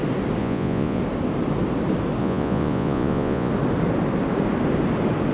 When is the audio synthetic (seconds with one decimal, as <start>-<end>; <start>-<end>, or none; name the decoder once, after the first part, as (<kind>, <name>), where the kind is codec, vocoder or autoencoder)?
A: 0.4-1.0 (vocoder, Vocos); 2.2-3.5